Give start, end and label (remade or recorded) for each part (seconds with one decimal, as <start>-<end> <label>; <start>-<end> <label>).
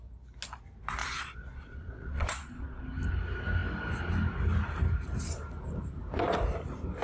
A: 0.0-1.0 recorded; 1.0-2.8 remade; 2.8-7.0 recorded